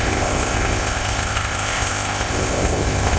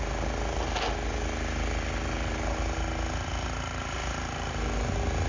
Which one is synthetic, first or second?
first